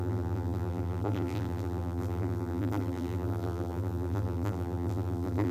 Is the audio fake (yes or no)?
yes